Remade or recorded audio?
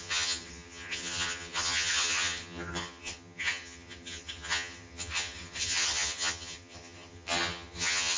remade